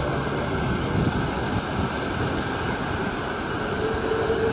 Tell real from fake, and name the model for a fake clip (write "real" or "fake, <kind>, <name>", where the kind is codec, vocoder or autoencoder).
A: real